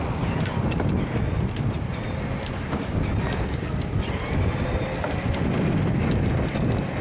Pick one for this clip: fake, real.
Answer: real